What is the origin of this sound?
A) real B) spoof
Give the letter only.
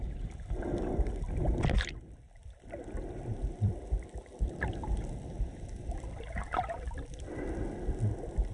B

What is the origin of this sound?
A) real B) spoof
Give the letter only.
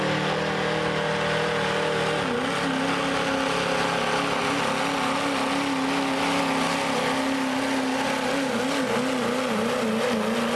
A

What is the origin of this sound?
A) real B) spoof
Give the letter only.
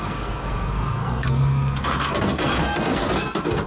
B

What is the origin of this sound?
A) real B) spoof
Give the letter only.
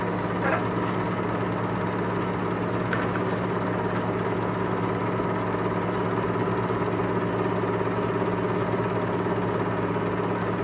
A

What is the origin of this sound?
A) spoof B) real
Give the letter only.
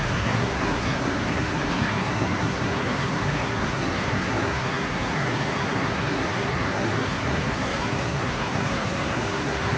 A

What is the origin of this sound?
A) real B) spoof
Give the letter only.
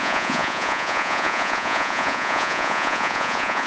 B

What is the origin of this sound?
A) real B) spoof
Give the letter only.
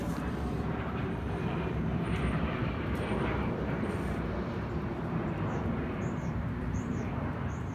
B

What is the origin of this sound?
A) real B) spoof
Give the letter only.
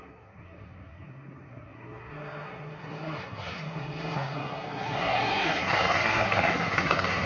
B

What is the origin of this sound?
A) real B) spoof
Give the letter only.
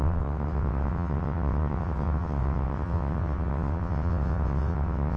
B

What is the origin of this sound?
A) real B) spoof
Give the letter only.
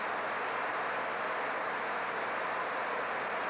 A